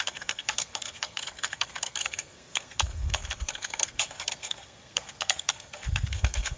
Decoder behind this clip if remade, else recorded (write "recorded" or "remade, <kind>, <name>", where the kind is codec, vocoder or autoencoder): remade, codec, SNAC